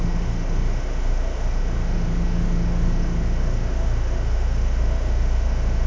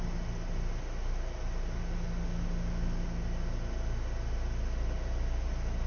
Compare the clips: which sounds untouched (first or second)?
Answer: second